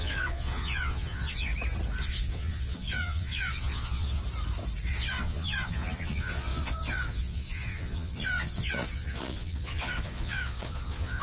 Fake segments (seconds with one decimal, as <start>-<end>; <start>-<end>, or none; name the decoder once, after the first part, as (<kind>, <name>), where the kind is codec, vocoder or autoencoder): 0.0-1.5 (vocoder, Vocos); 2.0-4.2; 4.9-11.2